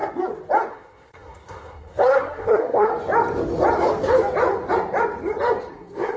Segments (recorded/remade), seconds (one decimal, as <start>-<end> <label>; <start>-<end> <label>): 0.0-0.7 recorded; 0.7-2.9 remade; 2.9-5.7 recorded; 5.7-6.2 remade